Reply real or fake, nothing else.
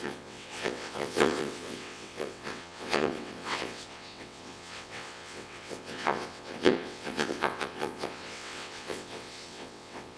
fake